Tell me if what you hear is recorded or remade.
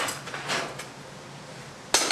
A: recorded